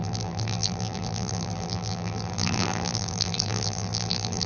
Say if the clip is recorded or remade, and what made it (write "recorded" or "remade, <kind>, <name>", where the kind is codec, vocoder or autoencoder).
remade, vocoder, BigVGAN v2